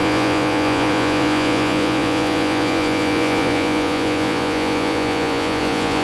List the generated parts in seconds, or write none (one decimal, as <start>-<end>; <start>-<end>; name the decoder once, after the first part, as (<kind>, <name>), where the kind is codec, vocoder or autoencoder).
0.0-6.0 (vocoder, Vocos)